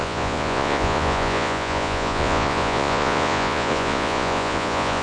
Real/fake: fake